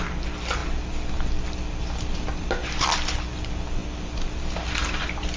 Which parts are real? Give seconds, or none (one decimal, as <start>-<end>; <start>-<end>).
0.0-5.4